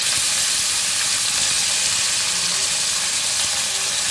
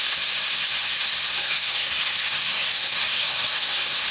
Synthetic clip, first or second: second